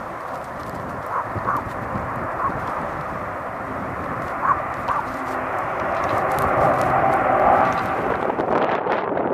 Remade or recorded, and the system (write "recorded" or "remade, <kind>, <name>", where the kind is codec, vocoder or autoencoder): remade, vocoder, BigVGAN v2